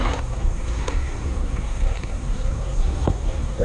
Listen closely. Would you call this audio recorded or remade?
remade